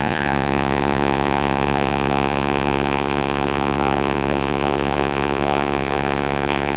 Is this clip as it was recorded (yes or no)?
no